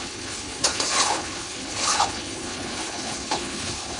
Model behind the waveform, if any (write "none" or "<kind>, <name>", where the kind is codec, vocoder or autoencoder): codec, HILCodec